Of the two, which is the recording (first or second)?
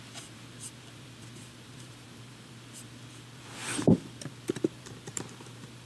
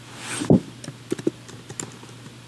second